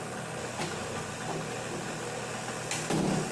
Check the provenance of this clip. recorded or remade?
recorded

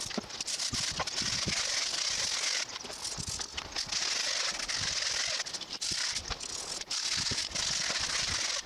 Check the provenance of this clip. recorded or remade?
recorded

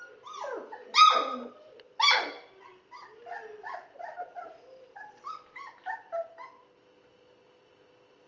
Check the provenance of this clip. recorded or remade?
recorded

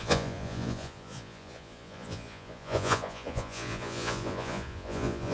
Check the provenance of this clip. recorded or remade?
remade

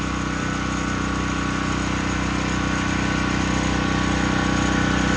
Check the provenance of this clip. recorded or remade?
recorded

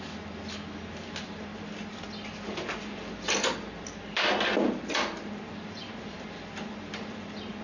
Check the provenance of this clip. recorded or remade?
recorded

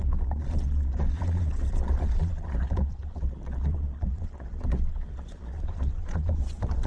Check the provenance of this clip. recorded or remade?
remade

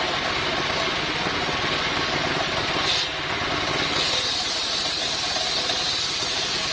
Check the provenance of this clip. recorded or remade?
recorded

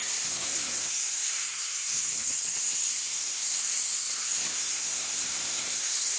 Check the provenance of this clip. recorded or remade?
remade